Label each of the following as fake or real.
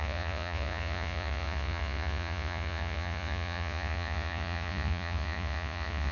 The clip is fake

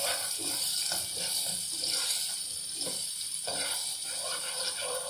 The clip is fake